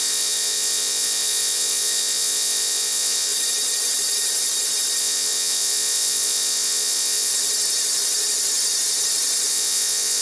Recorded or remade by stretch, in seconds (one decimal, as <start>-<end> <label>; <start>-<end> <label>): 0.0-3.3 remade; 3.3-5.0 recorded; 5.0-7.3 remade; 7.3-9.5 recorded; 9.5-10.2 remade